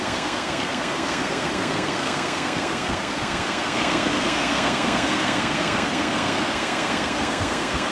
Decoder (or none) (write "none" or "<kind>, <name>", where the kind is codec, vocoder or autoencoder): codec, SNAC